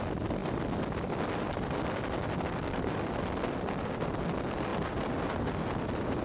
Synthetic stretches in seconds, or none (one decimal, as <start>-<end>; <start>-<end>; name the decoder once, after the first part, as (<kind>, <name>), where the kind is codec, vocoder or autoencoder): none

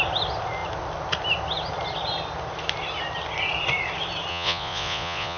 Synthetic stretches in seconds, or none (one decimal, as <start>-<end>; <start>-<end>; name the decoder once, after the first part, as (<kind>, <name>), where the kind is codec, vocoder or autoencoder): 4.3-5.4 (vocoder, Vocos)

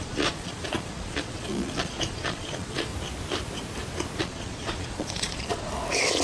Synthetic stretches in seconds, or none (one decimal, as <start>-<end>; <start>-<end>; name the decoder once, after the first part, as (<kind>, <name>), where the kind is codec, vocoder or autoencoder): 0.0-2.9 (vocoder, Vocos); 4.2-5.7

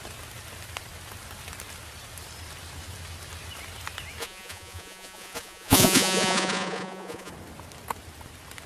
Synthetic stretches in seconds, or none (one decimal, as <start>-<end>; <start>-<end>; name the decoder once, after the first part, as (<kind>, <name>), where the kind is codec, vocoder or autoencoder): 4.2-7.3 (vocoder, Vocos)

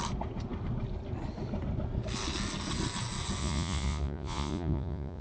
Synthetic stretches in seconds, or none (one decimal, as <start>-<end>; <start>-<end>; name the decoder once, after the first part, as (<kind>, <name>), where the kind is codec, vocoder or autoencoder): 3.4-5.2 (vocoder, Vocos)

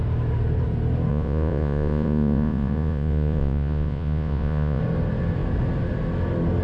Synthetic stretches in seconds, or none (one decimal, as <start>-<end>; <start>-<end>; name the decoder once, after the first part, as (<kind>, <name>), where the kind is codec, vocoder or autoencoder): 1.1-4.8 (vocoder, Vocos)

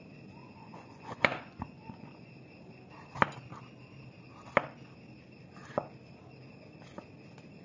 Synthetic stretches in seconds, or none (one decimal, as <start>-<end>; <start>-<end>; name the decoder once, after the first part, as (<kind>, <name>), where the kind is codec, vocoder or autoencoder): 0.4-2.3 (vocoder, Vocos)